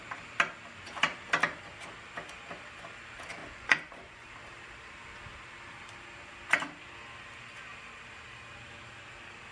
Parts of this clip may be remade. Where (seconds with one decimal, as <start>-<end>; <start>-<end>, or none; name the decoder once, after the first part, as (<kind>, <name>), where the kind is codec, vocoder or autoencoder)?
3.4-4.3 (vocoder, Vocos)